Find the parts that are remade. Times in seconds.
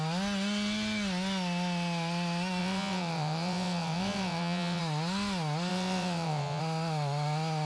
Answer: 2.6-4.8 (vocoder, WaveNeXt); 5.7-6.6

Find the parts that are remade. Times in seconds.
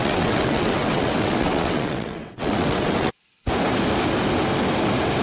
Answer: 0.0-3.1 (vocoder, WaveNeXt)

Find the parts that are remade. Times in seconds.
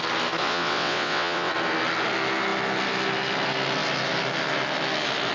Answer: 0.4-1.5 (vocoder, WaveNeXt)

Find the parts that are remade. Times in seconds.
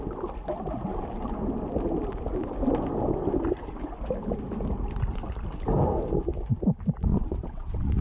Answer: 7.1-8.0 (vocoder, WaveNeXt)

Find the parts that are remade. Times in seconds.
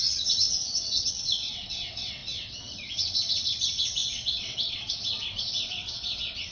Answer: 0.0-6.5 (vocoder, WaveNeXt)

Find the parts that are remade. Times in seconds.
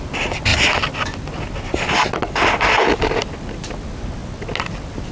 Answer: none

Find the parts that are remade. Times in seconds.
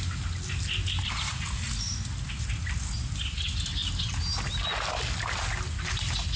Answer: none